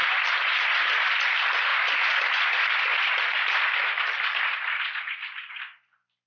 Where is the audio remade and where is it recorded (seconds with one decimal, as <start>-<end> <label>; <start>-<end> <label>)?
0.0-1.7 recorded; 1.7-5.5 remade; 5.5-6.3 recorded